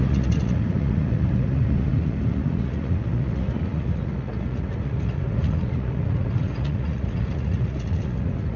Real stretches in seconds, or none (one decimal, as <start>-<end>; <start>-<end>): none